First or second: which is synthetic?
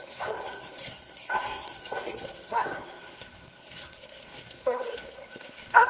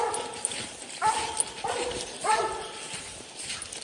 first